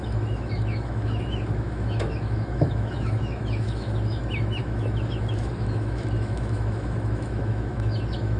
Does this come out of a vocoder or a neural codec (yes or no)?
yes